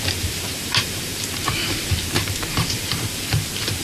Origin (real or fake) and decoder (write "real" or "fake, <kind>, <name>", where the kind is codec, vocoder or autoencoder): fake, vocoder, BigVGAN v2